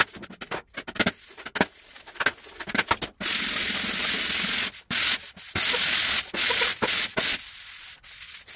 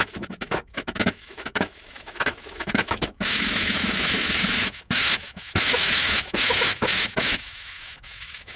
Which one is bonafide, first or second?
first